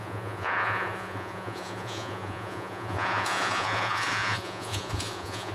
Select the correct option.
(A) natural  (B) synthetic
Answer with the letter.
B